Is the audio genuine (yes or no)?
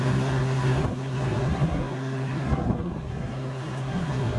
no